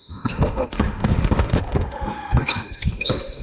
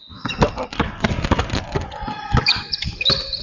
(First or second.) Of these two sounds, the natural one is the second